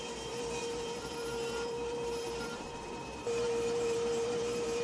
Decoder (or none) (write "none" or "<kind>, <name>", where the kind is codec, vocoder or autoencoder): vocoder, BigVGAN v2